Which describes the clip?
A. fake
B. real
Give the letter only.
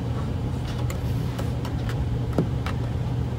A